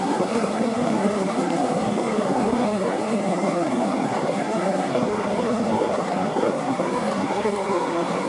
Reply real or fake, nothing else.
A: fake